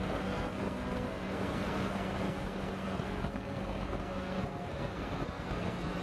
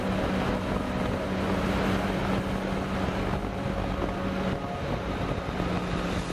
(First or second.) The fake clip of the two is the first